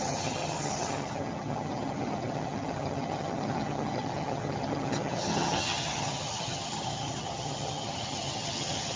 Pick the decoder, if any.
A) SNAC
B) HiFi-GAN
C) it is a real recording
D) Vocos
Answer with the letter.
B